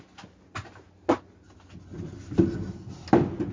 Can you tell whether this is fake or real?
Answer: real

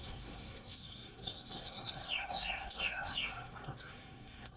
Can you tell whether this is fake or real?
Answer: fake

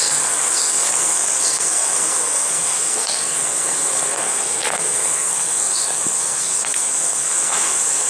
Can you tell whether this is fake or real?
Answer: fake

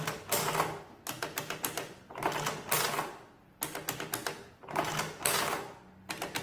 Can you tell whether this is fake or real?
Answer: real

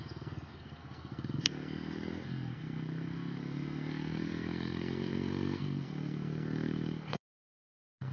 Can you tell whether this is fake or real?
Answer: fake